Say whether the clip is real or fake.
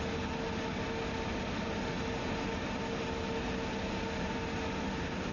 real